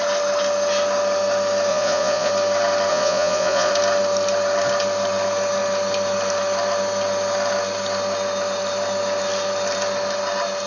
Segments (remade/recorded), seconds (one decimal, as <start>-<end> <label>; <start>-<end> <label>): 0.0-1.7 recorded; 1.7-2.3 remade; 2.3-2.9 recorded; 2.9-3.7 remade; 3.7-10.7 recorded